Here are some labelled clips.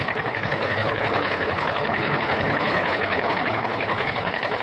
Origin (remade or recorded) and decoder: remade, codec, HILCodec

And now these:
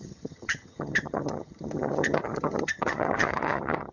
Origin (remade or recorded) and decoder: remade, vocoder, HiFi-GAN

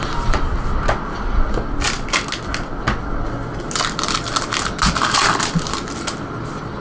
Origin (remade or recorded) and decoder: recorded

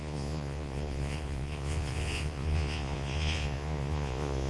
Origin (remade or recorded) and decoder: remade, vocoder, Vocos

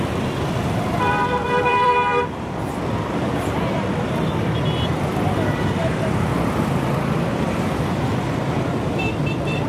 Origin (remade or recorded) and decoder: remade, vocoder, BigVGAN v2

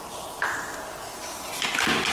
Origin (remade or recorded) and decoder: recorded